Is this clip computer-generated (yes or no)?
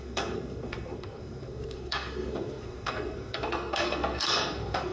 yes